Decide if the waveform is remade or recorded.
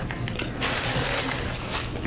recorded